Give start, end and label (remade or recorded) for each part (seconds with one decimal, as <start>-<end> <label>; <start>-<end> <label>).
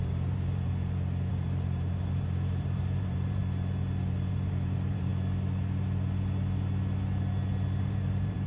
0.0-0.7 remade; 0.7-1.3 recorded; 1.3-3.4 remade; 3.4-4.3 recorded; 4.3-5.1 remade; 5.1-7.8 recorded; 7.8-8.5 remade